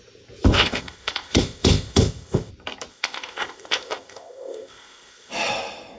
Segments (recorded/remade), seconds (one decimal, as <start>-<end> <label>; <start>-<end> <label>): 0.0-0.5 recorded; 0.5-2.5 remade; 2.5-2.9 recorded; 2.9-5.3 remade; 5.3-6.0 recorded